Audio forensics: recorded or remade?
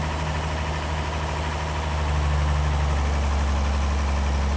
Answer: recorded